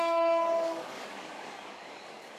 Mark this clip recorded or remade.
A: remade